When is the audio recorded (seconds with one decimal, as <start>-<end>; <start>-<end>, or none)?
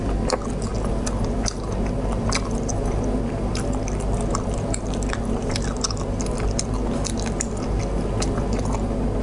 0.0-9.2